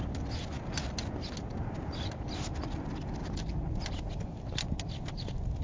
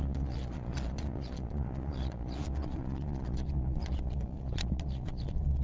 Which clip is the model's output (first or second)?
second